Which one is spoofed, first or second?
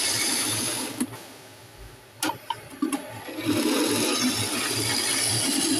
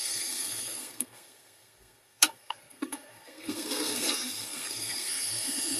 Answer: second